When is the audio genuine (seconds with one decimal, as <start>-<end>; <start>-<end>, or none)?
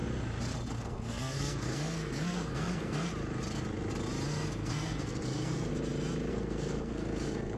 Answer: 0.0-0.7; 3.1-4.3; 5.7-6.3